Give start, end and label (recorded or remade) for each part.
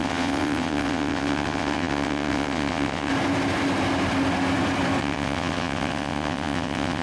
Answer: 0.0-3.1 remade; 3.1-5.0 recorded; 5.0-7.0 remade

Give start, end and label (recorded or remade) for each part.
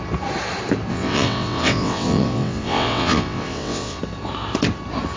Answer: 0.0-0.9 recorded; 0.9-4.0 remade; 4.0-5.2 recorded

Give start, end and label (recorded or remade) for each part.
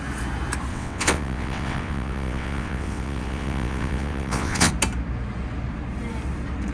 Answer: 0.0-0.7 recorded; 0.7-4.7 remade; 4.7-6.7 recorded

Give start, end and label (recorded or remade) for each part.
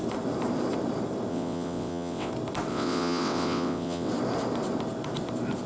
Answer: 0.0-1.3 recorded; 1.3-2.3 remade; 2.3-2.7 recorded; 2.7-4.1 remade; 4.1-5.7 recorded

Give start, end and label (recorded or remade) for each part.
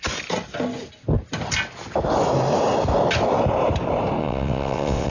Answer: 0.0-4.2 recorded; 4.2-5.1 remade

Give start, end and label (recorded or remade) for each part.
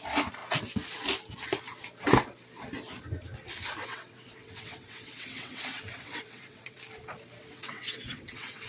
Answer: 0.0-3.9 recorded; 3.9-6.8 remade; 6.8-7.4 recorded; 7.4-8.7 remade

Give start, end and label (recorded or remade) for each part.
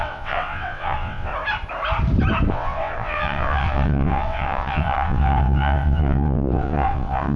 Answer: 0.0-1.3 remade; 1.3-2.5 recorded; 2.5-7.4 remade